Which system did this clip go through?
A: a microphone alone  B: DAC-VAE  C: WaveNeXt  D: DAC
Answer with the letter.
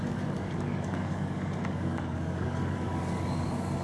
D